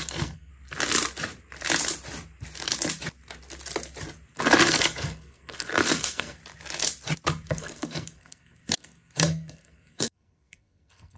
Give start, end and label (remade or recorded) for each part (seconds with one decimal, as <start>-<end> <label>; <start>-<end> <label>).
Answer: 0.0-0.5 remade; 0.5-4.6 recorded; 4.6-6.4 remade; 6.4-7.5 recorded; 7.5-11.2 remade